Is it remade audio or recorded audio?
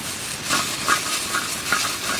recorded